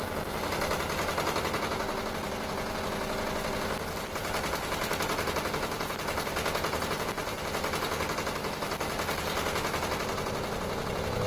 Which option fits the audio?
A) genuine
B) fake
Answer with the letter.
A